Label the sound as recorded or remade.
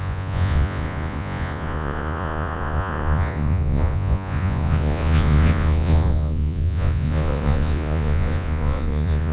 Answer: remade